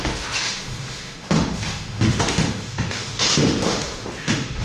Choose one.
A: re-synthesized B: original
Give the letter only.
A